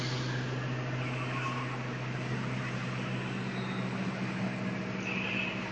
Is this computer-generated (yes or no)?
no